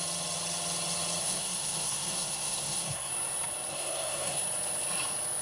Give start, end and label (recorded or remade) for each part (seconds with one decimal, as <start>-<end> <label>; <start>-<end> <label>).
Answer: 0.0-1.2 recorded; 1.2-3.1 remade; 3.1-3.7 recorded; 3.7-4.4 remade; 4.4-5.4 recorded